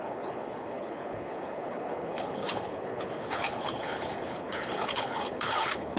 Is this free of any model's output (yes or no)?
no